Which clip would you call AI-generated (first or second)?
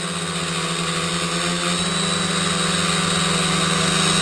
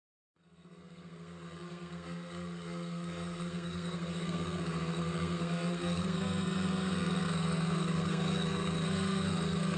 second